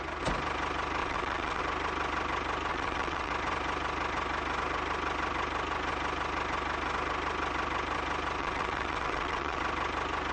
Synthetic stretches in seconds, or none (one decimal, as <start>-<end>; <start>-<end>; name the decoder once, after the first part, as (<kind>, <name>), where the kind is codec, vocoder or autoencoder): 1.0-1.6 (vocoder, WaveNeXt); 2.7-3.3; 8.4-9.6